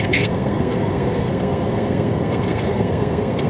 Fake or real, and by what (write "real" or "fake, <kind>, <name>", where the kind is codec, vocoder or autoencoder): fake, codec, SNAC